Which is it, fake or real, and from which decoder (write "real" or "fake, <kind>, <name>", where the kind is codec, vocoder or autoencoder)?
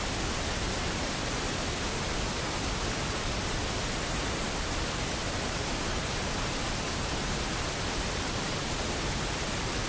real